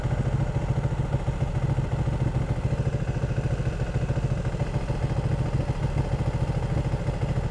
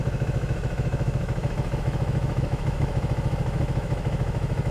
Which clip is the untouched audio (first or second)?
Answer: first